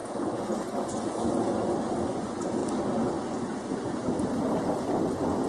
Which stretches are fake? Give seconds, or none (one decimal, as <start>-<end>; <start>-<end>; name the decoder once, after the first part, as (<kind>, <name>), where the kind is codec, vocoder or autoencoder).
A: 0.0-2.6 (vocoder, Vocos); 3.2-4.0